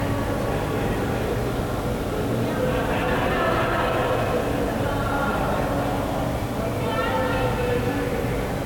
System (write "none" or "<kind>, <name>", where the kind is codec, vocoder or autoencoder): none